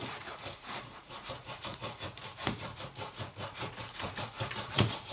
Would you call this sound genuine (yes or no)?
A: no